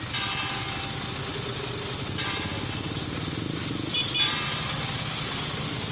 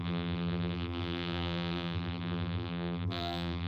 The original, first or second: first